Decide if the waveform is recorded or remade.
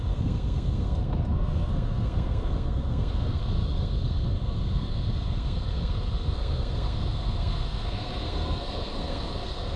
remade